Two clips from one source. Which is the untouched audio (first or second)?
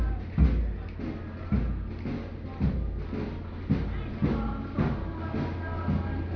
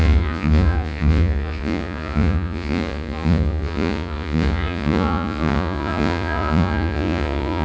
first